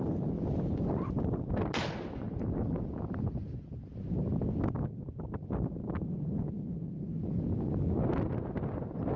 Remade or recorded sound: recorded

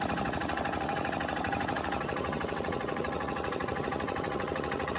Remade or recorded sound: remade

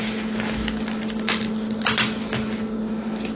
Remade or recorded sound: recorded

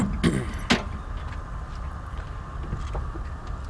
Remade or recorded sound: recorded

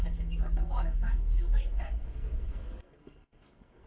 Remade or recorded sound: remade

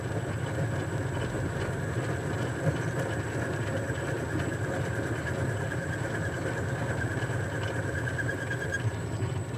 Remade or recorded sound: recorded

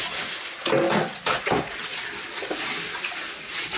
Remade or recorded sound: recorded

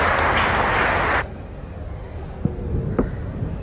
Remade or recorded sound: recorded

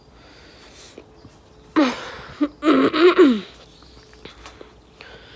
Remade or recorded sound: recorded